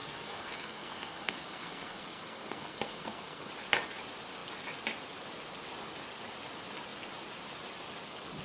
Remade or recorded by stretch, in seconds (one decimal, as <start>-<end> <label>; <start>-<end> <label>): 0.0-3.5 remade; 3.5-8.4 recorded

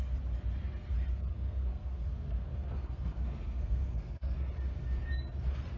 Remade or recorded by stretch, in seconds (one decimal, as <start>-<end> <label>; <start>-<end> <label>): 0.0-1.3 recorded; 1.3-4.5 remade; 4.5-5.8 recorded

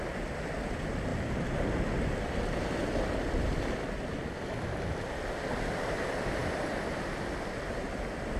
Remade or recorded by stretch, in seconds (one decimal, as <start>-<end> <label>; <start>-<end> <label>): 0.0-8.4 recorded

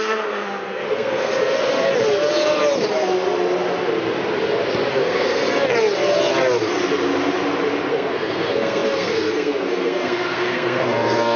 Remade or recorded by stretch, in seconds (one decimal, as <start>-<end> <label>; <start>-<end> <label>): 0.0-1.3 remade; 1.3-4.9 recorded; 4.9-5.4 remade; 5.4-7.9 recorded; 7.9-11.4 remade

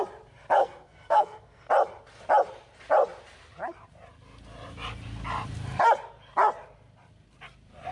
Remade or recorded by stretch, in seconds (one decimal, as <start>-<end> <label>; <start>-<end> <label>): 0.0-0.6 recorded; 0.6-1.7 remade; 1.7-7.9 recorded

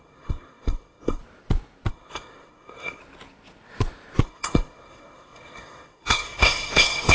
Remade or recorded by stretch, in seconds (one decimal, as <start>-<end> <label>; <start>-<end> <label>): 0.0-1.2 remade; 1.2-1.9 recorded; 1.9-3.0 remade; 3.0-4.2 recorded; 4.2-7.1 remade